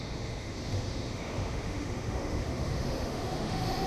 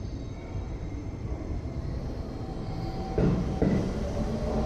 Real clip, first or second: second